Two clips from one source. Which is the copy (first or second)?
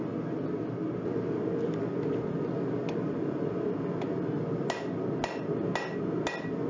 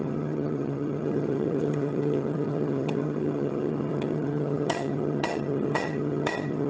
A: second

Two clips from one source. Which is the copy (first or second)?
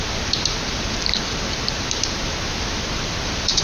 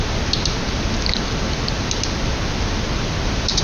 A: first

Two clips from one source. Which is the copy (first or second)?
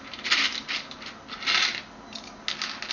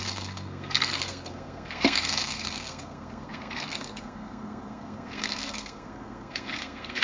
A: second